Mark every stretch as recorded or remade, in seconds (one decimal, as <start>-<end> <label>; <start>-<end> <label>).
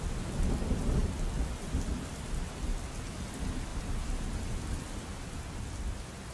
0.0-6.3 recorded